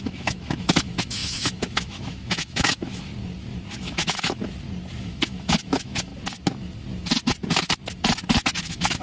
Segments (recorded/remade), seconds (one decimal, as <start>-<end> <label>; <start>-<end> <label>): 0.0-3.1 remade; 3.1-3.8 recorded; 3.8-4.4 remade; 4.4-5.0 recorded; 5.0-6.1 remade; 6.1-8.6 recorded; 8.6-9.0 remade